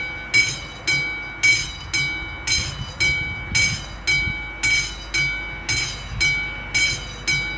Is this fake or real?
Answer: real